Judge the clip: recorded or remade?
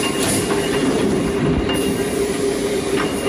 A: remade